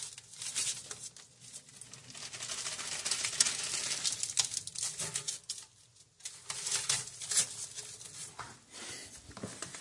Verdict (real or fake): real